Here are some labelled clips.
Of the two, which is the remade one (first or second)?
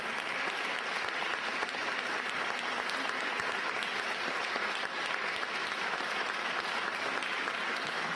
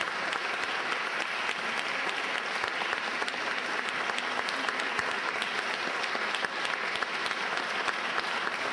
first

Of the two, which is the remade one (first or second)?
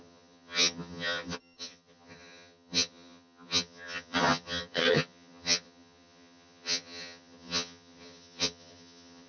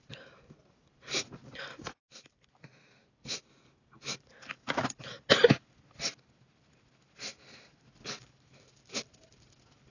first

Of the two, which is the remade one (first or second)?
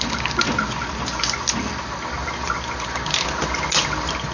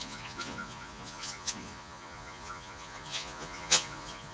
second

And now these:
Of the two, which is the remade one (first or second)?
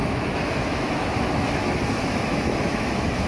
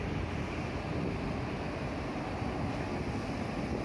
first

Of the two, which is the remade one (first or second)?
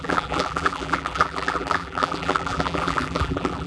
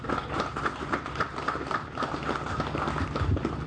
first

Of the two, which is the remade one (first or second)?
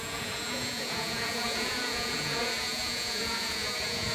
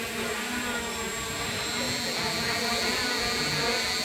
first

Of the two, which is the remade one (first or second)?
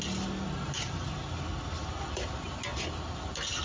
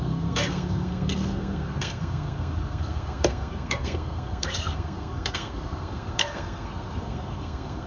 second